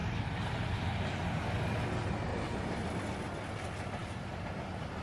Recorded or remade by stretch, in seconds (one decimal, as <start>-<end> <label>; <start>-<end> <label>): 0.0-2.3 recorded; 2.3-2.9 remade; 2.9-4.0 recorded; 4.0-4.6 remade; 4.6-5.0 recorded